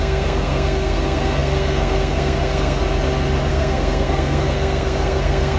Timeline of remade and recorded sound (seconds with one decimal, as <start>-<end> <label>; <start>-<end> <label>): 0.0-2.8 remade; 2.8-3.5 recorded; 3.5-5.6 remade